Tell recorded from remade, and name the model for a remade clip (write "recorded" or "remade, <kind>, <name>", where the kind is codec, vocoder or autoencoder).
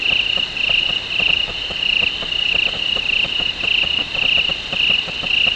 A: recorded